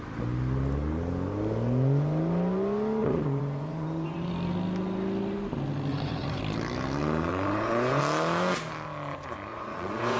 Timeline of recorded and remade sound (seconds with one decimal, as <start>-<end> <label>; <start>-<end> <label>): 0.0-3.0 recorded; 3.0-4.3 remade; 4.3-5.9 recorded; 5.9-6.4 remade; 6.4-7.3 recorded; 7.3-8.0 remade; 8.0-9.5 recorded; 9.5-10.2 remade